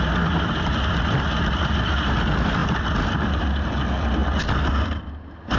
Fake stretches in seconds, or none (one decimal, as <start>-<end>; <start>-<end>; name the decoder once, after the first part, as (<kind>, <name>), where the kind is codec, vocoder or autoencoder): none